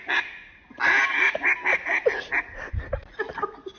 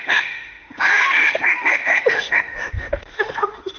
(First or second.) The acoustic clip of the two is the first